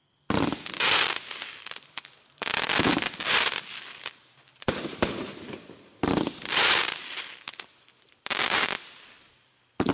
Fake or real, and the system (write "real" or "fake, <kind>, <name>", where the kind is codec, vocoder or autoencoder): fake, vocoder, BigVGAN v2